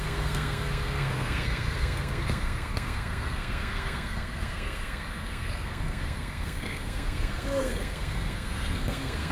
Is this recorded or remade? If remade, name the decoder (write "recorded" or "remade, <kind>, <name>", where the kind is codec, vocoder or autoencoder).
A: remade, codec, SNAC